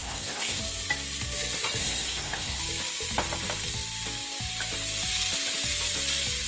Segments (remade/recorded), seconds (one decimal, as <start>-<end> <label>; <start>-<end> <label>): 0.0-0.6 remade; 0.6-1.8 recorded; 1.8-2.6 remade; 2.6-6.5 recorded